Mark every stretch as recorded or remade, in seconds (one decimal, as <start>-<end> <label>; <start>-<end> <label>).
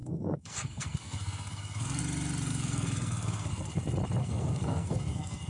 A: 0.0-2.0 remade; 2.0-2.5 recorded; 2.5-3.8 remade; 3.8-4.2 recorded; 4.2-5.5 remade